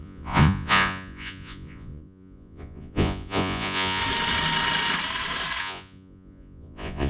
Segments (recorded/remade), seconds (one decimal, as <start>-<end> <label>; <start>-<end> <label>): 0.0-4.0 remade; 4.0-5.6 recorded; 5.6-7.1 remade